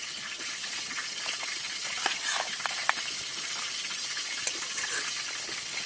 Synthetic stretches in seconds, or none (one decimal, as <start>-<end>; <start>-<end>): 0.0-1.0